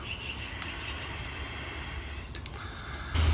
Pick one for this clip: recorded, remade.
recorded